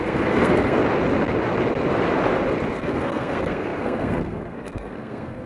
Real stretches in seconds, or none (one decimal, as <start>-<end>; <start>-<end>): 0.8-2.7